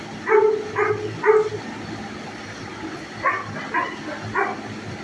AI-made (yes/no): no